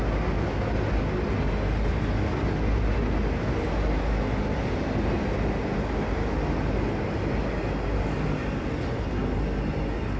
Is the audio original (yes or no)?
yes